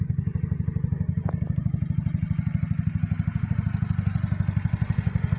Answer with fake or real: real